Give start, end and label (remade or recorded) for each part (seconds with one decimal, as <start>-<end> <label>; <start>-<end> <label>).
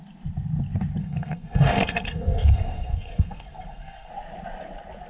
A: 0.0-1.0 recorded; 1.0-4.1 remade; 4.1-5.1 recorded